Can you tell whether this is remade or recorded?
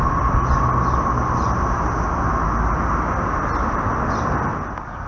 recorded